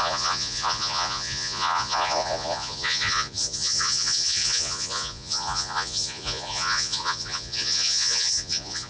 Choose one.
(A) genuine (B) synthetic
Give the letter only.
B